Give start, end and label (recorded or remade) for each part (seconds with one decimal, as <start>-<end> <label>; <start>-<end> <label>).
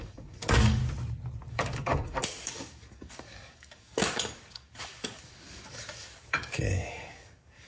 0.0-0.8 remade; 0.8-1.5 recorded; 1.5-7.7 remade